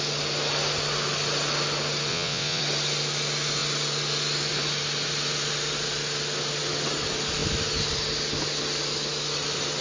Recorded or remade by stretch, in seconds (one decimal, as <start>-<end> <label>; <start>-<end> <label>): 0.0-2.1 recorded; 2.1-2.6 remade; 2.6-9.8 recorded